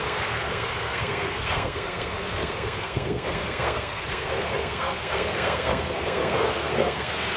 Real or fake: fake